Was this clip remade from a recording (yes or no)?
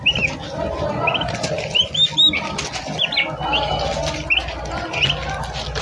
no